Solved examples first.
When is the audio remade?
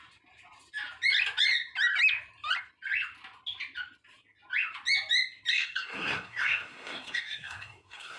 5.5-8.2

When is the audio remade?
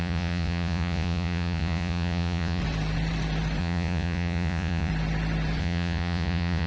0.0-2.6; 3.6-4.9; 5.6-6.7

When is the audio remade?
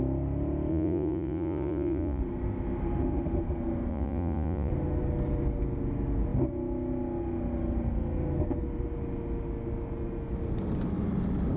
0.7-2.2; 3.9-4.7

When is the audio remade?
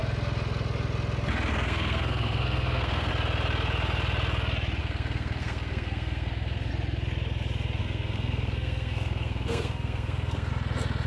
1.5-3.1; 4.8-6.7; 7.8-10.5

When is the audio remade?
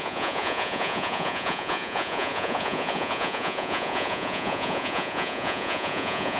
0.0-6.4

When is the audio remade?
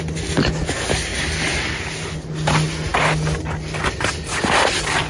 none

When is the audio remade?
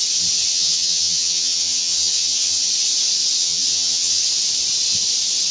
0.5-2.7; 3.4-4.2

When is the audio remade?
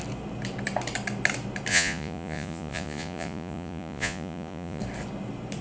1.7-4.8